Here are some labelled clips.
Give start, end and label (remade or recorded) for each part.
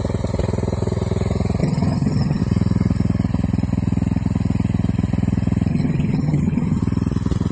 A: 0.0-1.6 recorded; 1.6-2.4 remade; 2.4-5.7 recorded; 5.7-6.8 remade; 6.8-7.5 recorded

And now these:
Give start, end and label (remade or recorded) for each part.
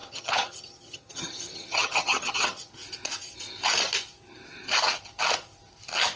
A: 0.0-2.7 remade; 2.7-6.2 recorded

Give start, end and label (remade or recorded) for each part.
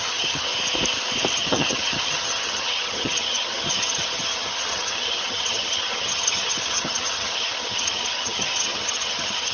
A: 0.0-0.5 remade; 0.5-1.3 recorded; 1.3-9.5 remade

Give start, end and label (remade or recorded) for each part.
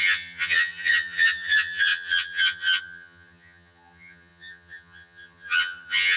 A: 0.0-6.2 remade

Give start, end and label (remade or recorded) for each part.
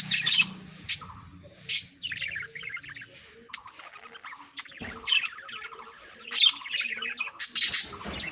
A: 0.0-8.3 recorded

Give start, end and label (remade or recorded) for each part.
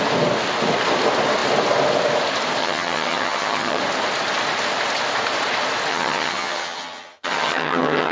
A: 0.0-2.6 recorded; 2.6-3.8 remade; 3.8-5.9 recorded; 5.9-8.1 remade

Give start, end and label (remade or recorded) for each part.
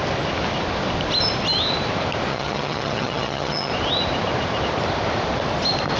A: 0.0-2.3 recorded; 2.3-3.7 remade; 3.7-6.0 recorded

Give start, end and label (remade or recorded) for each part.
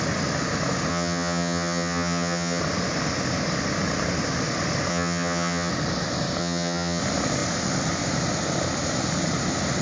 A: 0.0-0.9 recorded; 0.9-2.6 remade; 2.6-4.9 recorded; 4.9-5.7 remade; 5.7-6.4 recorded; 6.4-7.0 remade; 7.0-9.8 recorded